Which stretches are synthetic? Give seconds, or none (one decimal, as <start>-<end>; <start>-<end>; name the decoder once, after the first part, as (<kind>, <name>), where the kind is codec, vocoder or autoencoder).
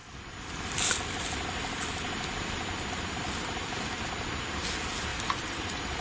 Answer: 5.1-6.0 (vocoder, BigVGAN v2)